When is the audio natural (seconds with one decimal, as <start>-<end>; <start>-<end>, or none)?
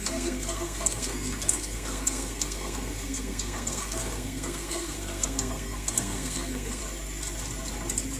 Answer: 6.8-8.2